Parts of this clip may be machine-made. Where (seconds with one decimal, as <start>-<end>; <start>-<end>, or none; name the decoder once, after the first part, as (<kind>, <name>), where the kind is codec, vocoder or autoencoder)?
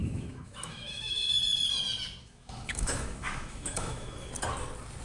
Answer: 0.0-1.3 (autoencoder, DAC-VAE); 2.2-4.3